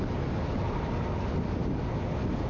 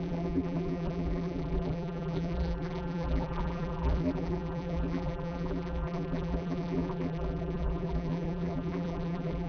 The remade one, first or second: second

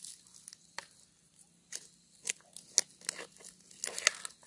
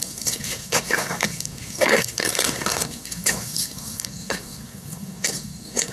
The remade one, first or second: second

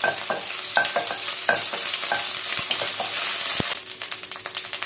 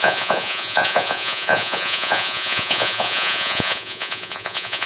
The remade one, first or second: second